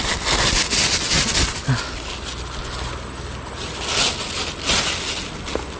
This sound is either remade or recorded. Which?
recorded